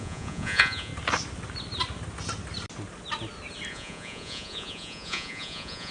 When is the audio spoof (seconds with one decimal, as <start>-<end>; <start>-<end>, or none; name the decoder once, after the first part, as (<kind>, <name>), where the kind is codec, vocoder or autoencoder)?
0.0-0.9 (vocoder, Vocos); 3.7-5.9